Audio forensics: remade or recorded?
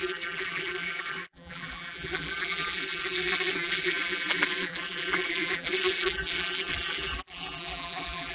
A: remade